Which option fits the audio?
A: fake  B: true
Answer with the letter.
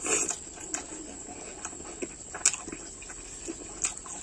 B